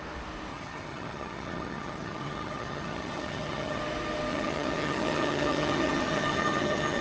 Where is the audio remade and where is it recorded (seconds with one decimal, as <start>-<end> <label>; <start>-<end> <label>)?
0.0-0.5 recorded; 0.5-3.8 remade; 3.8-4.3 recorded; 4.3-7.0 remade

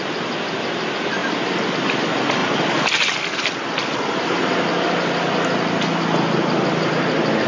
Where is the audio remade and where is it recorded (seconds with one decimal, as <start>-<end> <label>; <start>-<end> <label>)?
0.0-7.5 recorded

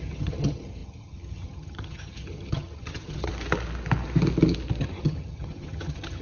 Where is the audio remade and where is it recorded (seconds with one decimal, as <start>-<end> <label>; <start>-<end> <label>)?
0.0-3.3 remade; 3.3-4.8 recorded; 4.8-6.2 remade

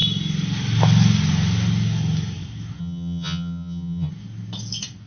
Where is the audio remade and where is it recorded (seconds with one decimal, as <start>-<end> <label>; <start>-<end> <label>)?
0.0-2.8 recorded; 2.8-4.1 remade; 4.1-5.1 recorded

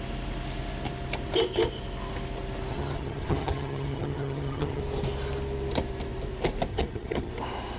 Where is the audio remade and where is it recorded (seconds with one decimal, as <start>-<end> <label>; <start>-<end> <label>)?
0.0-2.7 recorded; 2.7-4.8 remade; 4.8-6.7 recorded; 6.7-7.3 remade; 7.3-7.8 recorded

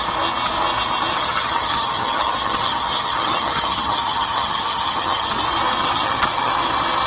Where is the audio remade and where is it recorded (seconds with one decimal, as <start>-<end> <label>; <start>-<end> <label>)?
0.0-1.1 recorded; 1.1-5.3 remade; 5.3-5.8 recorded; 5.8-6.5 remade; 6.5-7.1 recorded

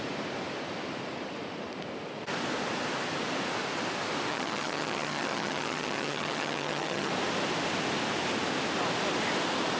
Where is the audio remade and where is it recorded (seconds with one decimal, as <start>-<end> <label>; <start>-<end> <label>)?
0.0-4.3 recorded; 4.3-7.1 remade; 7.1-9.8 recorded

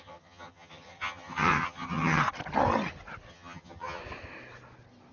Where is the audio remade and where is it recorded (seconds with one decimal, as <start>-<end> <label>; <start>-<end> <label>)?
0.0-2.2 remade; 2.2-3.3 recorded; 3.3-4.0 remade; 4.0-5.1 recorded